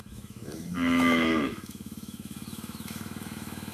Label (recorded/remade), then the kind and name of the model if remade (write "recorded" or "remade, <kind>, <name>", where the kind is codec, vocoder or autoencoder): remade, autoencoder, DAC-VAE